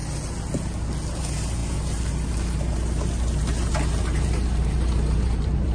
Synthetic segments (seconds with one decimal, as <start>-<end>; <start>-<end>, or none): 1.2-5.7